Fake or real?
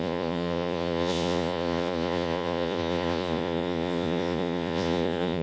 fake